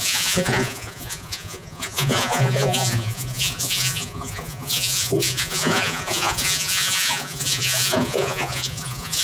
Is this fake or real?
fake